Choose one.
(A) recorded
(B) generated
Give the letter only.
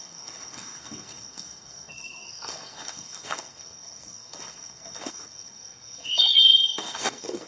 B